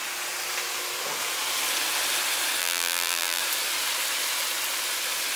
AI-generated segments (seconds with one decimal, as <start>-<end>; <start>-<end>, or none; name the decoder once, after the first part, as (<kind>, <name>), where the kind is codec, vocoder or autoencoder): 2.6-3.4 (vocoder, BigVGAN v2)